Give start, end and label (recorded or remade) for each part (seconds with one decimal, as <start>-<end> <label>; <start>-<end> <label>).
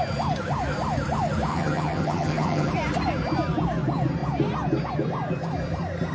0.0-1.5 recorded; 1.5-2.7 remade; 2.7-6.1 recorded